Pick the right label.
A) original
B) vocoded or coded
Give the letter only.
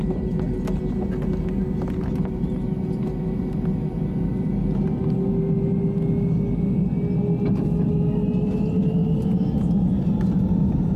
A